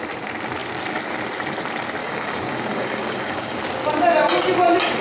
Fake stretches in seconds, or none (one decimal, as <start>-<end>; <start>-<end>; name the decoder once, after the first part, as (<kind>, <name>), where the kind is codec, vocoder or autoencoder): 2.0-3.6 (codec, DAC)